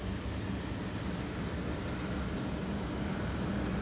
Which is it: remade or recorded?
recorded